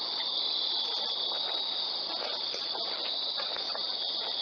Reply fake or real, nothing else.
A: real